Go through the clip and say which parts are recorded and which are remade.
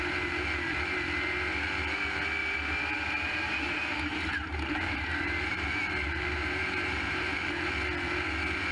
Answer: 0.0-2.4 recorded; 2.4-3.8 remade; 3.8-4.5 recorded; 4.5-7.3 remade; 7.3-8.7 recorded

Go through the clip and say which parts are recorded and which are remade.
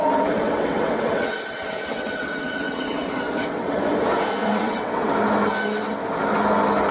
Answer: 0.0-0.4 recorded; 0.4-3.8 remade; 3.8-4.4 recorded; 4.4-5.1 remade; 5.1-6.9 recorded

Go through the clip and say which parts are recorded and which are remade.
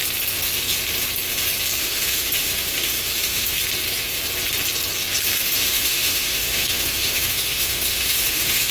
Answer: 0.0-1.8 recorded; 1.8-3.6 remade; 3.6-5.4 recorded; 5.4-8.7 remade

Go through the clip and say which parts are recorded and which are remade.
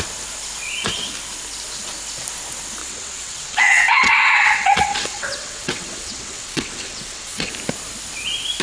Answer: 0.0-2.8 recorded; 2.8-7.5 remade; 7.5-8.6 recorded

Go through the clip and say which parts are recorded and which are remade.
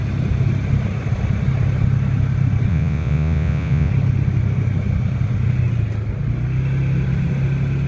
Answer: 0.0-2.7 recorded; 2.7-3.9 remade; 3.9-7.9 recorded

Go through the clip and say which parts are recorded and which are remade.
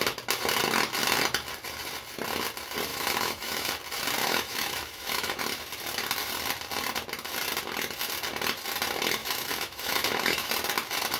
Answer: 0.0-2.9 recorded; 2.9-3.7 remade; 3.7-4.2 recorded; 4.2-5.4 remade; 5.4-9.2 recorded; 9.2-10.5 remade; 10.5-11.2 recorded